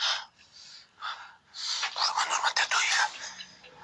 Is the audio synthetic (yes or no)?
no